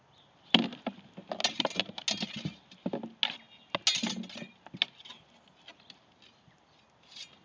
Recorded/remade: recorded